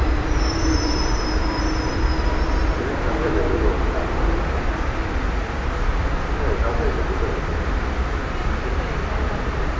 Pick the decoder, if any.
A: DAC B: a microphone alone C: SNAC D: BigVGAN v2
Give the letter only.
D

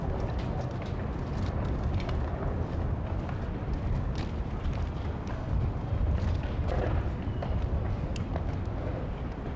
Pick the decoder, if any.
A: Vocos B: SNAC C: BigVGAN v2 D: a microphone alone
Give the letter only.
D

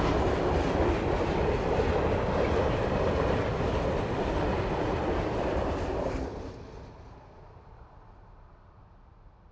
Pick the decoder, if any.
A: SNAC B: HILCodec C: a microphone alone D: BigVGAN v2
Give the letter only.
C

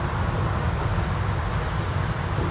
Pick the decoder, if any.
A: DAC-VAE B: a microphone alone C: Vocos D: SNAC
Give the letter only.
B